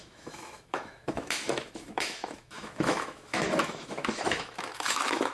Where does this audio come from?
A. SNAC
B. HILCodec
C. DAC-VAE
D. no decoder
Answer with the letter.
C